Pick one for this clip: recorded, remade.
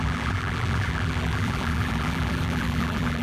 remade